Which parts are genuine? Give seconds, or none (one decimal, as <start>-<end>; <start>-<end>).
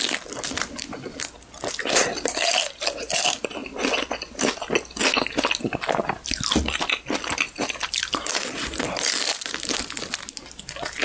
3.6-7.3